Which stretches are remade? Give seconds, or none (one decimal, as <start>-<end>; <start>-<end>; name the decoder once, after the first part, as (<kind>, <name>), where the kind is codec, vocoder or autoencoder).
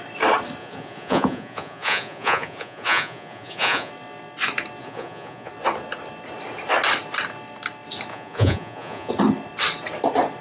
0.6-3.9 (vocoder, Vocos); 4.8-5.5; 8.1-9.1